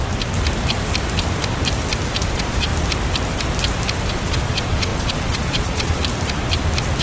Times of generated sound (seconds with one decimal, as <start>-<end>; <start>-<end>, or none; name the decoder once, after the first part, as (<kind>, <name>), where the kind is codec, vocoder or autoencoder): 2.3-2.7 (vocoder, Vocos); 4.1-6.0